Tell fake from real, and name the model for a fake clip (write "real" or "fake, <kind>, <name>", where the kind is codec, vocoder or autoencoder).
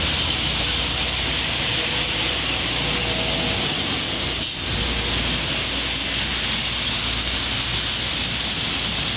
real